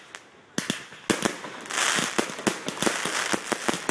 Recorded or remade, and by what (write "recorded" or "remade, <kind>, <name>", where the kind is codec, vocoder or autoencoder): recorded